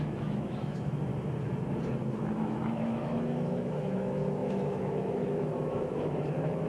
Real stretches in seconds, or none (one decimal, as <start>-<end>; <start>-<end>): 1.1-2.2